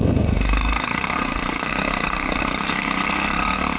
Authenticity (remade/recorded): remade